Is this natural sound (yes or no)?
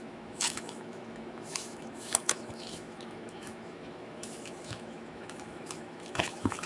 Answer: no